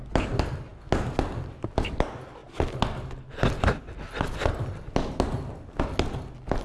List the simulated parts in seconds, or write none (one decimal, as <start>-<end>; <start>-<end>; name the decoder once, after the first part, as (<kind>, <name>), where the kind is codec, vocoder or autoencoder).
none